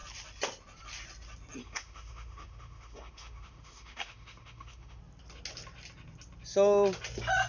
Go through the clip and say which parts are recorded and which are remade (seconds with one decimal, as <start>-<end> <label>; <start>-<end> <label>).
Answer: 0.0-1.6 recorded; 1.6-5.0 remade; 5.0-7.5 recorded